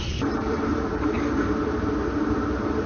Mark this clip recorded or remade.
remade